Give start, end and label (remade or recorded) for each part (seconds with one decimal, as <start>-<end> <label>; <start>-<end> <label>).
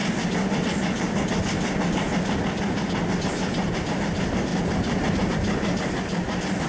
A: 0.0-6.7 recorded